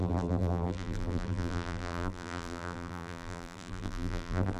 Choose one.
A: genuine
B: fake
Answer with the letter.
B